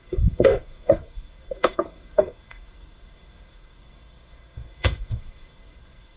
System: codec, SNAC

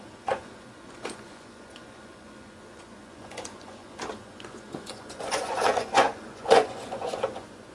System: vocoder, Vocos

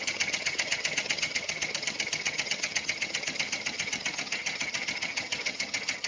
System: vocoder, HiFi-GAN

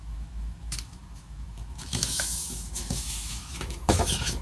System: autoencoder, DAC-VAE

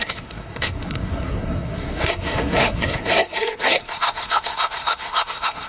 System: codec, SNAC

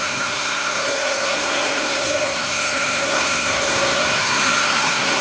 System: codec, SNAC